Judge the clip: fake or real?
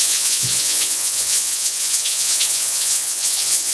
fake